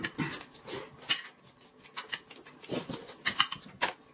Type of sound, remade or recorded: recorded